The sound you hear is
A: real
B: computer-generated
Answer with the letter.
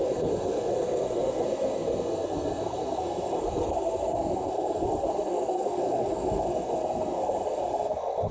B